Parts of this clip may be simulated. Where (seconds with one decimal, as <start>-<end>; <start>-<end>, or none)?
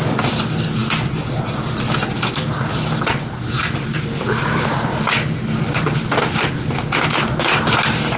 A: none